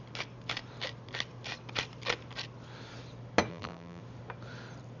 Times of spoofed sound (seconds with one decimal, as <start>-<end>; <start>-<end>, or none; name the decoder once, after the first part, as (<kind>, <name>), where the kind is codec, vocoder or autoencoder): 3.5-4.0 (vocoder, BigVGAN v2)